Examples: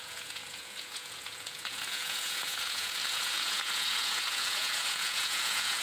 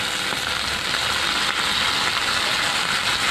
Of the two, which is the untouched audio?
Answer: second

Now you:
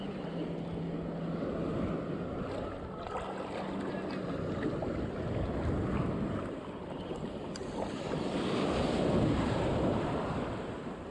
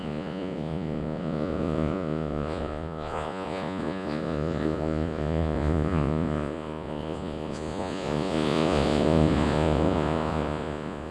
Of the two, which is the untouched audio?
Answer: first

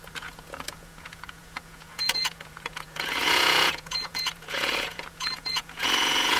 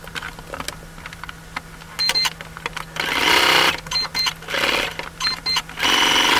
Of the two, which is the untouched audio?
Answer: second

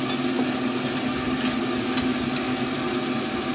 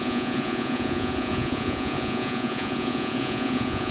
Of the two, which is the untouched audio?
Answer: first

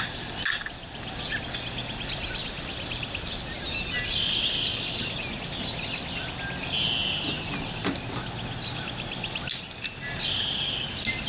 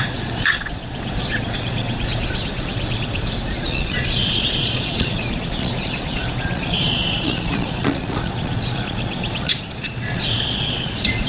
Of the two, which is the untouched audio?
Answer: first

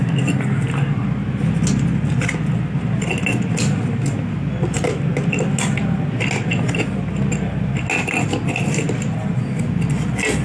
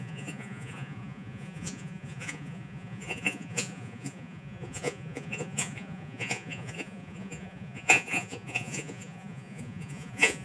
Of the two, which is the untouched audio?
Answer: first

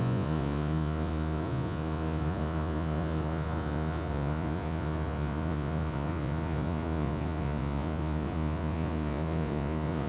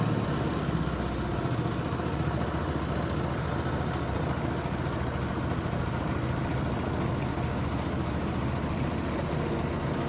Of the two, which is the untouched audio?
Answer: second